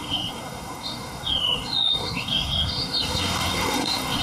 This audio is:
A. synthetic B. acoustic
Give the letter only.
A